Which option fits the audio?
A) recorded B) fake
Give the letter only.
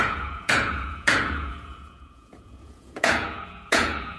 B